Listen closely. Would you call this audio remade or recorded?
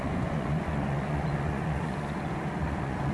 remade